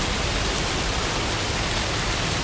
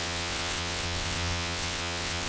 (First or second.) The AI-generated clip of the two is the second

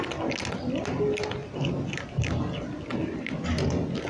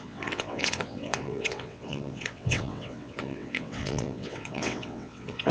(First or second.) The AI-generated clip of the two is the second